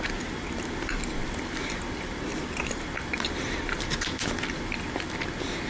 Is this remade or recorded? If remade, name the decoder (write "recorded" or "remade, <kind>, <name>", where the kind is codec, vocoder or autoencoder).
recorded